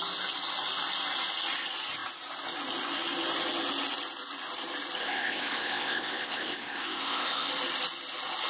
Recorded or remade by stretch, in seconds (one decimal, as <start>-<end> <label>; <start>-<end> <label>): 0.0-5.0 recorded; 5.0-7.5 remade; 7.5-8.5 recorded